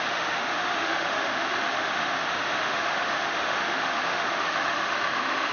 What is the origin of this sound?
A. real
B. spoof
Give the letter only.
B